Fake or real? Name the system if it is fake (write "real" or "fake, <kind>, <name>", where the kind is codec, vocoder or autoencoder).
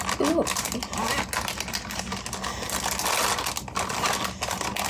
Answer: real